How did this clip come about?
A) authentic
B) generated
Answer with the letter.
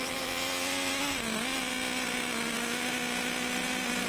A